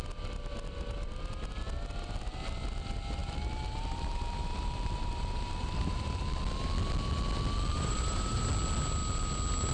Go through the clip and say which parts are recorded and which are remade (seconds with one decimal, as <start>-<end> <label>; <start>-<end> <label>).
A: 0.0-3.2 recorded; 3.2-6.2 remade; 6.2-7.7 recorded; 7.7-8.5 remade; 8.5-9.7 recorded